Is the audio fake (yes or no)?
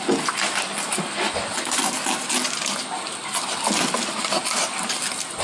no